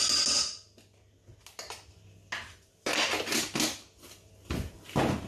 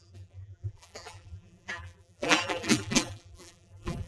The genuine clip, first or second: first